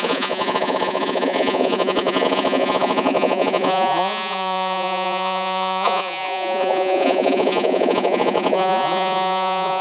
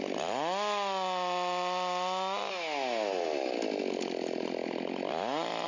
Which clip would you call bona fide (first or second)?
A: second